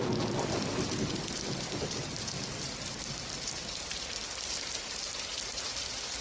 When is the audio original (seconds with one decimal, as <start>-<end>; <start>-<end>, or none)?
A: 0.0-6.2